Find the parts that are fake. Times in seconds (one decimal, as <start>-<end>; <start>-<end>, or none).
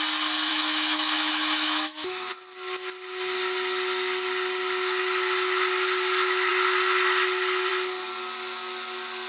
0.5-2.3